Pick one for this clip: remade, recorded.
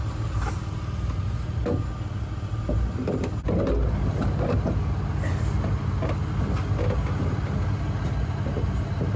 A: recorded